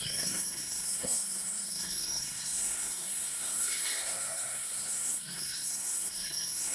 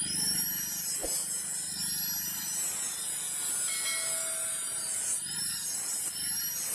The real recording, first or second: second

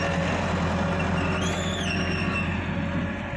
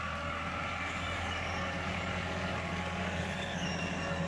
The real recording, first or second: first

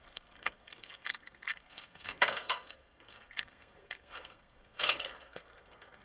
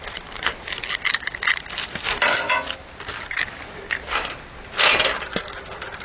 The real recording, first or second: second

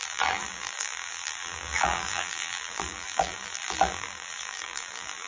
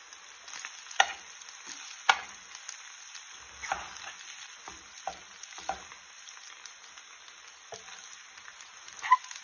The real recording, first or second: second